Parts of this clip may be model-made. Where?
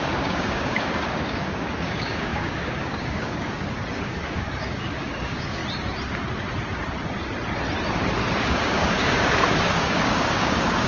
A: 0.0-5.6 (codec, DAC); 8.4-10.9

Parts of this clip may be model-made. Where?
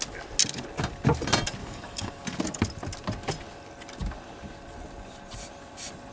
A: 1.6-2.4 (codec, DAC)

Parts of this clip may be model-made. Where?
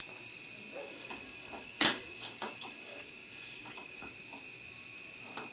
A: 0.8-4.1 (codec, DAC)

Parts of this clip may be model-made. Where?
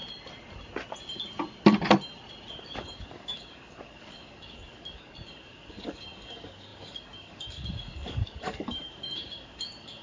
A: 2.6-10.0 (codec, DAC)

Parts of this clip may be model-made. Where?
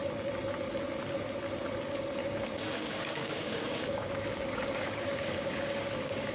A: 2.2-6.3 (codec, DAC)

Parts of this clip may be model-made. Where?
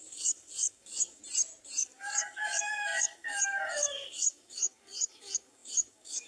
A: 0.0-1.2 (codec, DAC); 1.8-6.3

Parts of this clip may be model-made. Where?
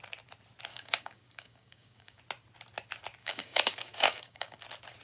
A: 0.7-2.2 (codec, DAC); 3.2-4.6